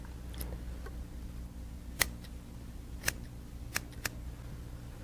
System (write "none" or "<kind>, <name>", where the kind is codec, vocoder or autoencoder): none